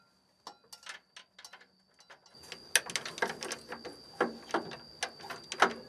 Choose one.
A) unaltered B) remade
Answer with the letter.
A